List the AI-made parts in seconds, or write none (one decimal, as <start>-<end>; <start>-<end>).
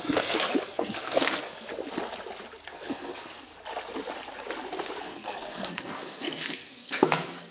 0.0-1.7; 2.7-3.5; 5.0-7.5